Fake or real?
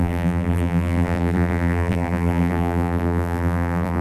fake